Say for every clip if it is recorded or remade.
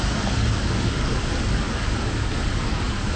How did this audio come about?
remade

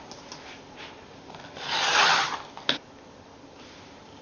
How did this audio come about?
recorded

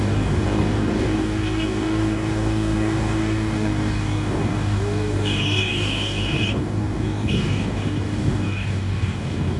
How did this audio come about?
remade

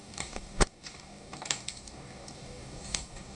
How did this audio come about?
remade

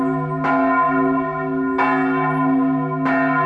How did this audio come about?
recorded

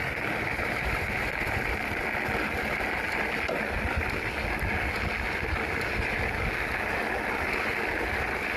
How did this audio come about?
recorded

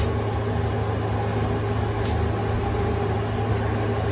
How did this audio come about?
recorded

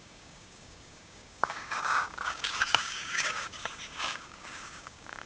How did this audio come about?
remade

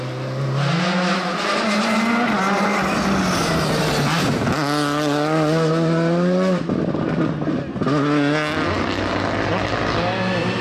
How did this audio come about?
recorded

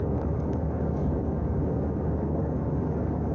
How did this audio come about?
remade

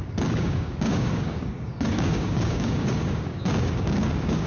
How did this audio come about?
remade